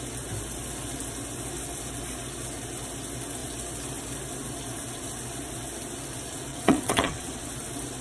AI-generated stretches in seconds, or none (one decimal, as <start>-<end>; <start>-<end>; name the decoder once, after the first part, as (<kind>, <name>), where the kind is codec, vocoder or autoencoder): 6.5-7.5 (vocoder, WaveNeXt)